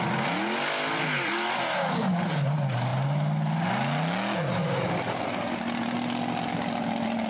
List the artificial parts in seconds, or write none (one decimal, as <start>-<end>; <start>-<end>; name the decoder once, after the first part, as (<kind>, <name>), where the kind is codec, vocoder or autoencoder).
none